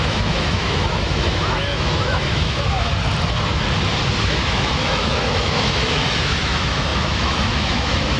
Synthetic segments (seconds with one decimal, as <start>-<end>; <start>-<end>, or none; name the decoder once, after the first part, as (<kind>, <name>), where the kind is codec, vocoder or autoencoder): 0.0-2.9 (autoencoder, DAC-VAE); 4.2-8.2